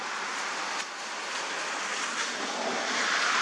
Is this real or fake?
real